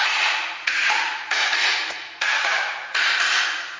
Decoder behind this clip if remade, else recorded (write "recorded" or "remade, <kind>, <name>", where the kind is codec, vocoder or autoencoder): remade, vocoder, Vocos